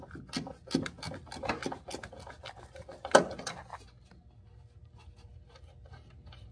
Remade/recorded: recorded